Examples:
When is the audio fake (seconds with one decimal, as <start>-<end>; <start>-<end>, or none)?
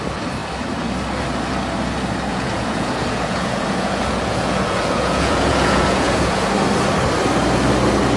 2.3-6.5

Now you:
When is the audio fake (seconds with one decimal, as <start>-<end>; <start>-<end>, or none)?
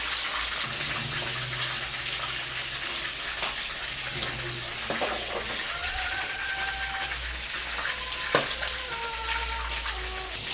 5.8-6.5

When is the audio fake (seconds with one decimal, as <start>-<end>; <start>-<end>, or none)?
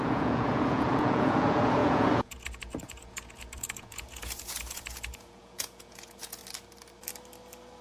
0.0-6.4